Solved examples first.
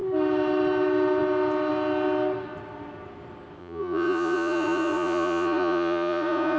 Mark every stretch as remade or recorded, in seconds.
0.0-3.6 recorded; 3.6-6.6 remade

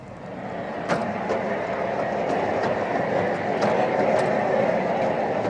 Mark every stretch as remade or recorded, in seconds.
0.0-5.5 recorded